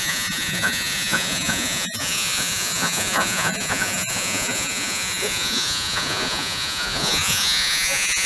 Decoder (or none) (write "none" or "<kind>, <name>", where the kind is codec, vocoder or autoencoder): vocoder, Vocos